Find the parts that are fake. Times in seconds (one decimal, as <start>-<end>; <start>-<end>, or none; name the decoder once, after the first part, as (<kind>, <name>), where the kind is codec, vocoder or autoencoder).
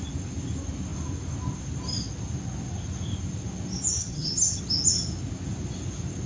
4.0-4.6 (vocoder, HiFi-GAN)